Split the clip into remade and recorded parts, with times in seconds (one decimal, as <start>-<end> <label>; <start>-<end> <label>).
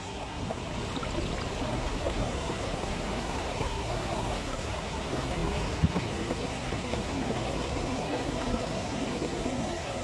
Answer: 0.0-0.6 remade; 0.6-1.7 recorded; 1.7-10.0 remade